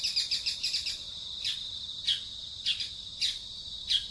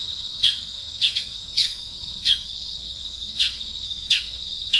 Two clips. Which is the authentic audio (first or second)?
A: first